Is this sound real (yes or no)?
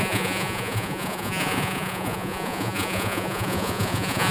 no